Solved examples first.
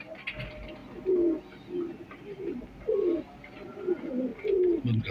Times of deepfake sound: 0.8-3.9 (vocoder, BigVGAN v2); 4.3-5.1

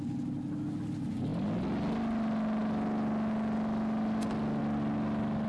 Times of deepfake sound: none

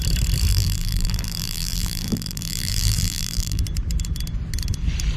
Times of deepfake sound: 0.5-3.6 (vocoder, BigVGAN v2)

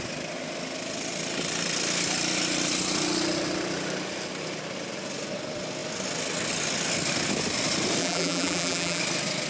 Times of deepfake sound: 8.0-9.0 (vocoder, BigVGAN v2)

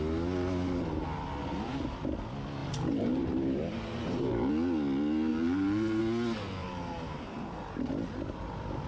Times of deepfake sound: 2.6-4.5 (vocoder, BigVGAN v2); 5.3-6.0; 6.6-7.9

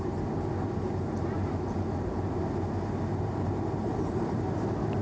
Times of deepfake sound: 3.8-4.6 (vocoder, BigVGAN v2)

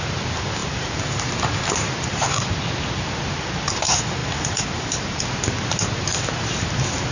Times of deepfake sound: 0.6-1.3 (vocoder, BigVGAN v2); 4.2-5.2

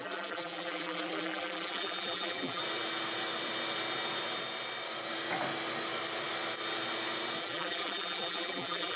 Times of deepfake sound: 0.0-2.6 (vocoder, BigVGAN v2); 7.4-9.0